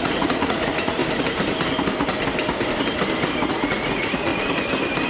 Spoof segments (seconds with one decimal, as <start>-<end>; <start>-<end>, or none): 0.0-1.0; 3.5-4.3